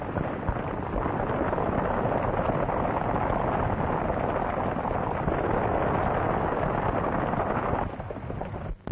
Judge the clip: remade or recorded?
recorded